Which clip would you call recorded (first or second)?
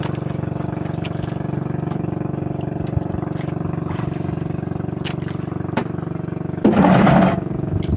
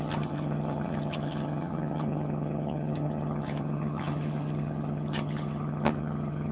first